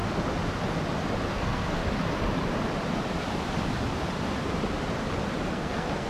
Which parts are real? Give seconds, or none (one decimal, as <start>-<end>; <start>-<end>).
0.0-1.3; 1.8-5.5